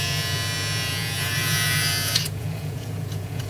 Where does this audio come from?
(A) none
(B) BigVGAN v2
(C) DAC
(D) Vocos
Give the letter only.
D